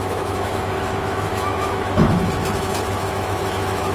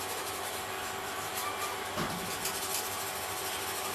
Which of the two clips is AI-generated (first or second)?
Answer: first